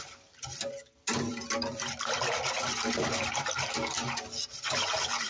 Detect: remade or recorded remade